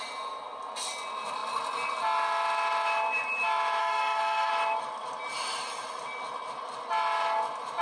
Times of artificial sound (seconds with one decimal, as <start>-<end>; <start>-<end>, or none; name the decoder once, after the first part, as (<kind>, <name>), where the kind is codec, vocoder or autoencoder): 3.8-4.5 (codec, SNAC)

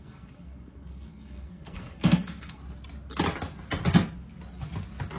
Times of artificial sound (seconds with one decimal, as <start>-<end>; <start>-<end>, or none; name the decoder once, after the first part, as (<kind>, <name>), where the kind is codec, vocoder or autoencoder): 0.0-2.6 (codec, SNAC)

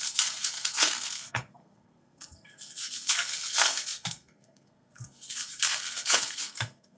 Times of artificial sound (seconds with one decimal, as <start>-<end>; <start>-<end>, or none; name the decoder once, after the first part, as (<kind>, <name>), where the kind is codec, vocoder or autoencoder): 0.0-7.0 (codec, SNAC)

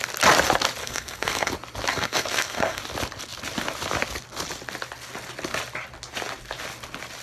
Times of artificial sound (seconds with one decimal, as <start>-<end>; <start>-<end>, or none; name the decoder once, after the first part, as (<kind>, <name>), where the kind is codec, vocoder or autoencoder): 0.8-1.5 (codec, SNAC); 1.9-2.8

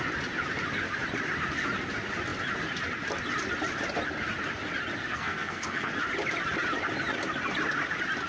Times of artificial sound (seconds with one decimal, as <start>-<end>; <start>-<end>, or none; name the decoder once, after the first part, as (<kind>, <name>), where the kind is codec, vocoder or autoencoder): 5.0-5.9 (codec, SNAC)

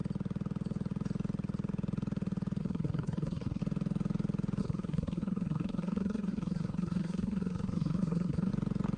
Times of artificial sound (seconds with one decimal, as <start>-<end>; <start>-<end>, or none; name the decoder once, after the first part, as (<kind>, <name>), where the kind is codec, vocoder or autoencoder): 2.6-3.6 (codec, SNAC); 4.6-8.5